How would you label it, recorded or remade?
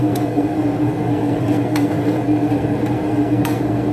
remade